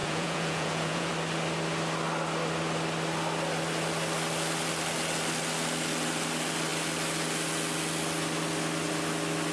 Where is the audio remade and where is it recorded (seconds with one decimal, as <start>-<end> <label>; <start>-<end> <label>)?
0.0-1.1 remade; 1.1-9.5 recorded